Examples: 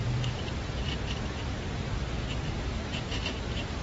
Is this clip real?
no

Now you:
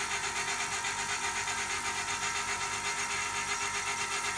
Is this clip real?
yes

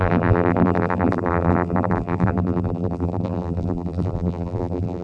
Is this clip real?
no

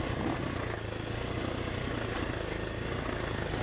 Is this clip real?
yes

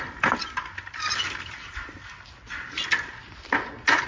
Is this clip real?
yes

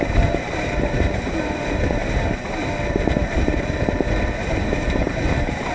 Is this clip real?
no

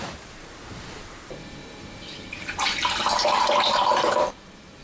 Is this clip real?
no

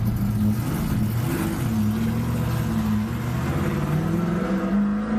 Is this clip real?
yes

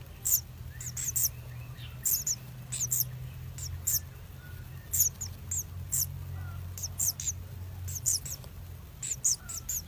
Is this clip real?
yes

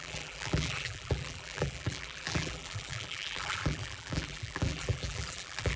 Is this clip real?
no